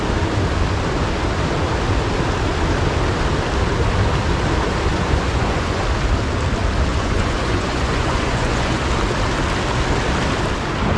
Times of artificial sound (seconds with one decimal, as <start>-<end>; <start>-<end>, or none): 4.9-5.8; 6.9-8.8